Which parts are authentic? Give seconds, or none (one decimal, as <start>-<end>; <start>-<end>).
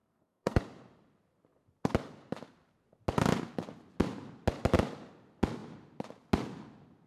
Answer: 0.6-7.1